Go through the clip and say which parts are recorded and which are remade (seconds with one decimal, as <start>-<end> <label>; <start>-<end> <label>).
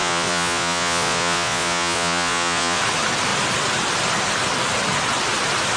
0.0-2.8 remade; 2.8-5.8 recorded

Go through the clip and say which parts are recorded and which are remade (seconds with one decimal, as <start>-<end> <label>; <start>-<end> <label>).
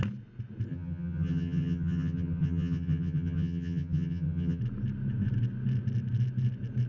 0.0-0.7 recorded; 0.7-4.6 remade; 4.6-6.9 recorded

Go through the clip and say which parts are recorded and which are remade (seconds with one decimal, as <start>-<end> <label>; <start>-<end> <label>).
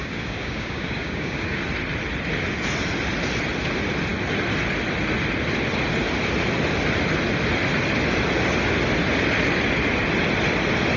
0.0-1.6 remade; 1.6-11.0 recorded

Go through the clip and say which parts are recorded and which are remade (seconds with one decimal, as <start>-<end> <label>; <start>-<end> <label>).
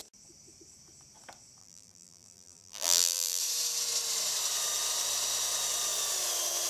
0.0-1.6 recorded; 1.6-3.4 remade; 3.4-6.7 recorded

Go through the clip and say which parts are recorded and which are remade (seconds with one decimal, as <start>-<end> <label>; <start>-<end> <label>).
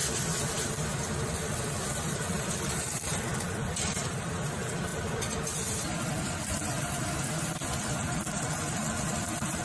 0.0-4.3 remade; 4.3-4.9 recorded; 4.9-7.3 remade; 7.3-9.6 recorded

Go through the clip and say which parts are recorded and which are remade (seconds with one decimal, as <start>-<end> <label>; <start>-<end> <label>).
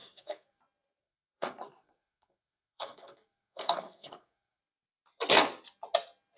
0.0-0.6 remade; 0.6-1.0 recorded; 1.0-4.6 remade; 4.6-6.4 recorded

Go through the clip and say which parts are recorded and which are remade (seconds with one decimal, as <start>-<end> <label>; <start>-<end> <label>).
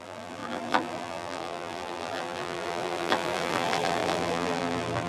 0.0-5.1 remade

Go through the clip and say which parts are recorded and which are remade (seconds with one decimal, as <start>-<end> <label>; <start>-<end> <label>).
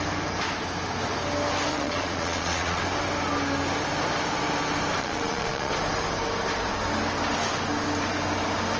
0.0-1.7 recorded; 1.7-2.8 remade; 2.8-5.0 recorded; 5.0-5.7 remade; 5.7-8.8 recorded